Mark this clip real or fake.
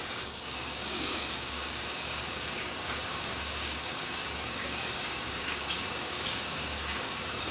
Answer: fake